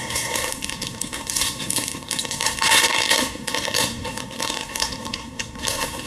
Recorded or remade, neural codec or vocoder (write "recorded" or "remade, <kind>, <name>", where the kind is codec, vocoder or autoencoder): remade, codec, SNAC